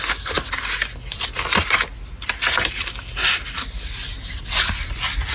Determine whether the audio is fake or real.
real